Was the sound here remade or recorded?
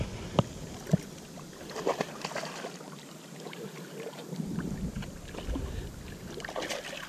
recorded